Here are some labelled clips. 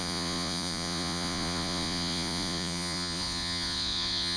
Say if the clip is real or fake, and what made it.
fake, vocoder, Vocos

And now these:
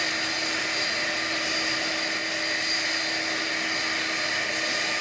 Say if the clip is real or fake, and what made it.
real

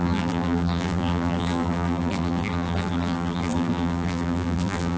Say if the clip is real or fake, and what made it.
fake, vocoder, BigVGAN v2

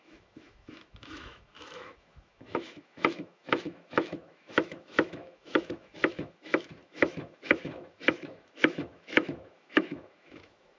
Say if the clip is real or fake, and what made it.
fake, autoencoder, DAC-VAE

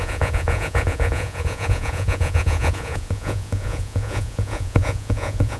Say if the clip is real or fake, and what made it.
fake, vocoder, Vocos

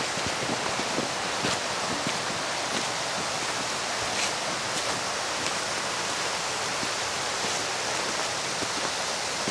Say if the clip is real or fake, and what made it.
real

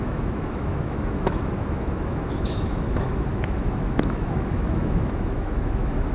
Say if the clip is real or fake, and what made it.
fake, autoencoder, DAC-VAE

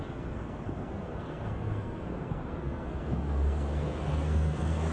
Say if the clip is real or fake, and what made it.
fake, codec, SNAC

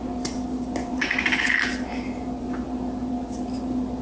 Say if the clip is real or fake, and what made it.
real